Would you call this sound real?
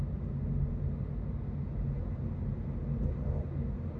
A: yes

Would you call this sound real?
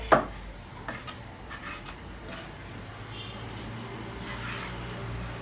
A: yes